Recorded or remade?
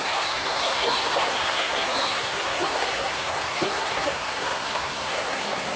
remade